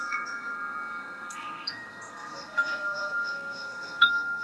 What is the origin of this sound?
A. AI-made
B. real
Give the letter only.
A